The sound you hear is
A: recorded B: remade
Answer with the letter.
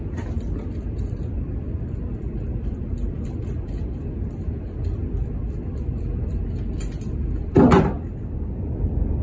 B